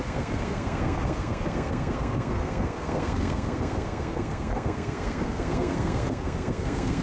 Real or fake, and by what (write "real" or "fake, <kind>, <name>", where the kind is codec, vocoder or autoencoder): fake, codec, SNAC